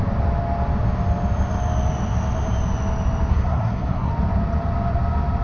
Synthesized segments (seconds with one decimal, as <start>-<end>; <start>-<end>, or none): 3.3-4.1